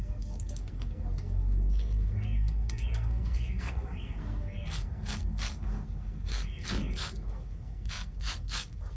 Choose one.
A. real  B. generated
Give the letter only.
B